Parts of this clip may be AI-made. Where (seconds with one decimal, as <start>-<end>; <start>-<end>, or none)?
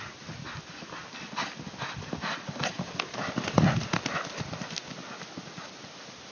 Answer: none